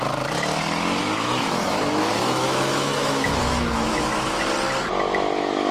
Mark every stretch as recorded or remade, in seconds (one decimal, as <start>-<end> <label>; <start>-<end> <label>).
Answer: 0.0-1.0 recorded; 1.0-4.4 remade; 4.4-5.7 recorded